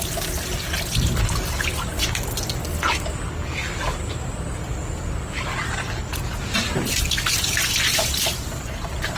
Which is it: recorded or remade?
recorded